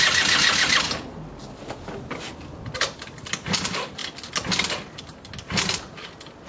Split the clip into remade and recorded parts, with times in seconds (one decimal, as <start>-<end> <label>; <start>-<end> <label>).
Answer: 0.0-6.5 recorded